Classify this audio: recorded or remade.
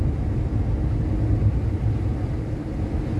recorded